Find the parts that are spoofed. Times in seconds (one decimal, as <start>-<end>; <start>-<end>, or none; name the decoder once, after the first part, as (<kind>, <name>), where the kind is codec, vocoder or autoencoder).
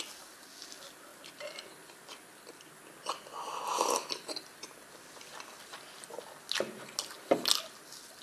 none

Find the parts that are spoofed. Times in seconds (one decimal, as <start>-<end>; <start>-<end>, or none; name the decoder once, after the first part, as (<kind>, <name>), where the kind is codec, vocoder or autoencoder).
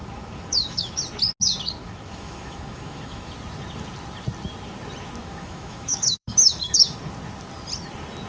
0.0-1.0 (autoencoder, DAC-VAE); 1.8-3.3; 5.2-7.0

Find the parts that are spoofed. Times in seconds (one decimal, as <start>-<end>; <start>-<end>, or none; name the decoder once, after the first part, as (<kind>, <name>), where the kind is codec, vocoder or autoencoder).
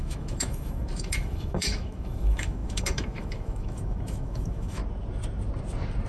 0.0-4.8 (autoencoder, DAC-VAE)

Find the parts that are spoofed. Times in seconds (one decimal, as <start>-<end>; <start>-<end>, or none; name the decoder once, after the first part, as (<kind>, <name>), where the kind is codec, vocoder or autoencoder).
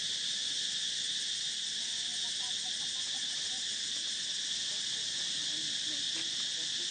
none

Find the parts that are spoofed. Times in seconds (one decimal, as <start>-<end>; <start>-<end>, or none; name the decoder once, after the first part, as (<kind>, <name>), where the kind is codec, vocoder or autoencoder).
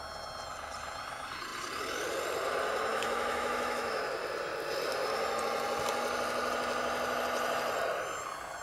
2.9-4.0 (autoencoder, DAC-VAE)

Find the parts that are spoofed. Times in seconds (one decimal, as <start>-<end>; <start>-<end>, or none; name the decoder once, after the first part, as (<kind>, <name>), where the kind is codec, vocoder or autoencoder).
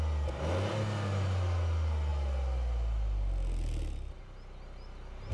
none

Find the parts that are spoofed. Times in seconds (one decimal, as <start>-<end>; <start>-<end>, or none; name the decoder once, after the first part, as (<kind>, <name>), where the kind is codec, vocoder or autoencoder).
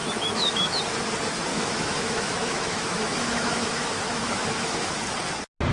0.0-0.8 (autoencoder, DAC-VAE); 1.5-4.9